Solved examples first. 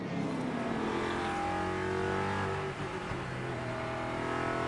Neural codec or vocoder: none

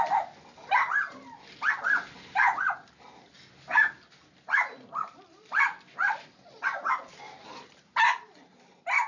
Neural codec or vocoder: none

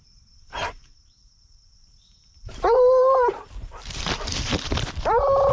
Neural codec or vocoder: vocoder, BigVGAN v2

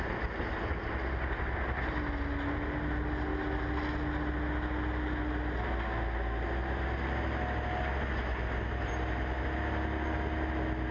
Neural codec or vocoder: none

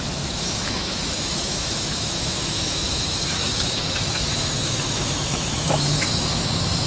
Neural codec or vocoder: autoencoder, DAC-VAE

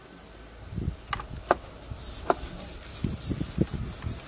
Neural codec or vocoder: none